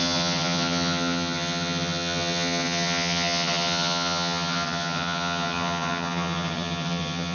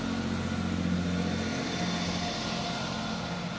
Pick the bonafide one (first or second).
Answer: second